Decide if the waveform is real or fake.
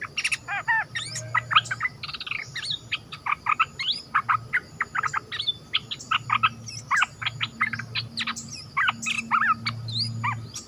real